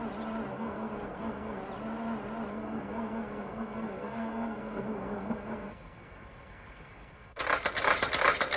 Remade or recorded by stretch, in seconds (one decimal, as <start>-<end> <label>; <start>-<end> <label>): 0.0-0.5 recorded; 0.5-1.6 remade; 1.6-2.5 recorded; 2.5-7.4 remade; 7.4-8.6 recorded